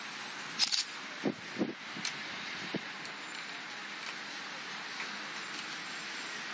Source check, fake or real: real